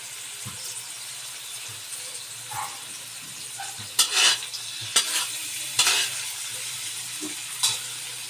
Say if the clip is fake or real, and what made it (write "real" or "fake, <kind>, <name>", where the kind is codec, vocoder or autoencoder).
fake, vocoder, BigVGAN v2